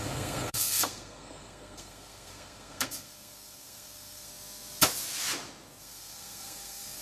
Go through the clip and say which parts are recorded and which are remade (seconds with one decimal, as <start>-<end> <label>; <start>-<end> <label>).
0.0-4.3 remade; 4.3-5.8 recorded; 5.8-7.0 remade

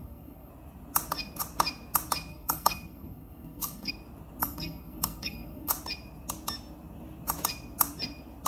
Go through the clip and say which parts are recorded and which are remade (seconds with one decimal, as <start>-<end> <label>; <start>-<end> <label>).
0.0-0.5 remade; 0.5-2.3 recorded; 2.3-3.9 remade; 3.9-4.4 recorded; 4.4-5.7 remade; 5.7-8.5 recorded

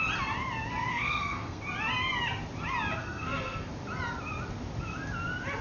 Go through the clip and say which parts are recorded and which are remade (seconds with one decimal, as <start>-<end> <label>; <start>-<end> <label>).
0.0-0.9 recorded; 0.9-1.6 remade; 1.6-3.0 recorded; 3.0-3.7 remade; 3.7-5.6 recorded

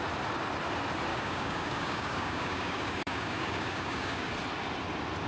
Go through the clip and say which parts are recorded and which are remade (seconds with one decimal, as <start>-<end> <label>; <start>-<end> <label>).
0.0-1.1 recorded; 1.1-4.3 remade; 4.3-5.3 recorded

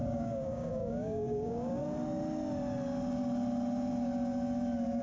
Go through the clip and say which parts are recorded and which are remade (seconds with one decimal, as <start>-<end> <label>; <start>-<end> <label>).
0.0-1.8 remade; 1.8-5.0 recorded

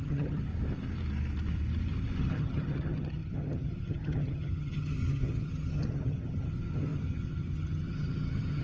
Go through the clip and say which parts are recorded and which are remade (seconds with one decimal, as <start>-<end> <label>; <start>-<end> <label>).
0.0-0.5 remade; 0.5-2.2 recorded; 2.2-8.6 remade

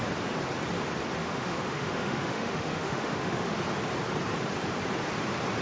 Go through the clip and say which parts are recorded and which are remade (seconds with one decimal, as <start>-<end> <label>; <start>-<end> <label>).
0.0-1.2 recorded; 1.2-3.6 remade; 3.6-5.6 recorded